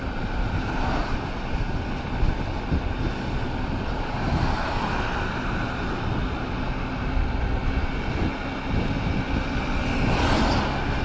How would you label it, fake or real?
real